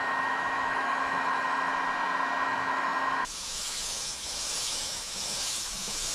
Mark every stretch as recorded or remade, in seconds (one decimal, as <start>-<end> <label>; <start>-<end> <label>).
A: 0.0-1.7 remade; 1.7-2.4 recorded; 2.4-6.1 remade